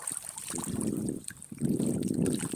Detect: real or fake fake